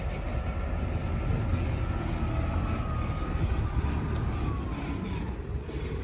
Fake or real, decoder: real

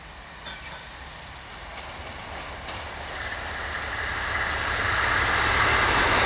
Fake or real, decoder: real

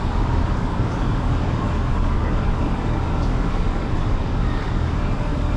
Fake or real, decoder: fake, codec, DAC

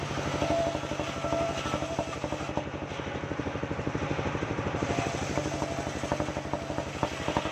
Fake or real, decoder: real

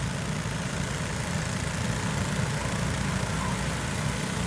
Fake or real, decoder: real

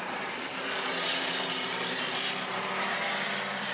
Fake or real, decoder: fake, vocoder, BigVGAN v2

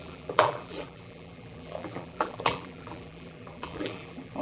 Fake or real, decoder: fake, vocoder, BigVGAN v2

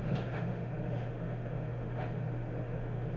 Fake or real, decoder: fake, autoencoder, DAC-VAE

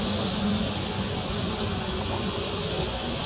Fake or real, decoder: fake, vocoder, Vocos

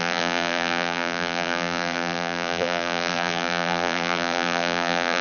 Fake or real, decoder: fake, vocoder, BigVGAN v2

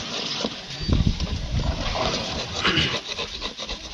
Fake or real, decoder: real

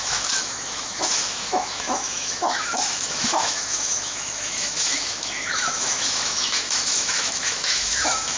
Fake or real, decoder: fake, autoencoder, DAC-VAE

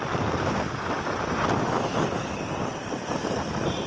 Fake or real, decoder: real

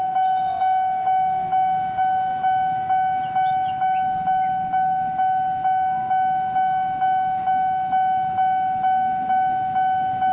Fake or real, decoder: real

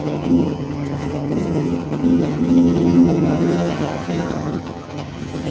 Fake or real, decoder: fake, vocoder, HiFi-GAN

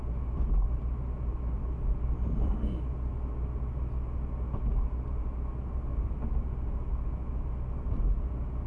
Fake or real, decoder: real